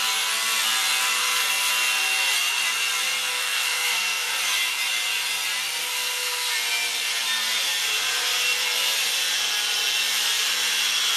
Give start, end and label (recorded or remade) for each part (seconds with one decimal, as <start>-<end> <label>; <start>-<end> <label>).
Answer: 0.0-1.2 recorded; 1.2-1.7 remade; 1.7-3.3 recorded; 3.3-4.3 remade; 4.3-5.8 recorded; 5.8-6.5 remade; 6.5-11.2 recorded